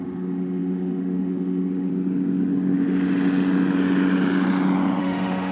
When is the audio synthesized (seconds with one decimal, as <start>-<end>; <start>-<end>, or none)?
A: 0.0-1.9; 5.0-5.5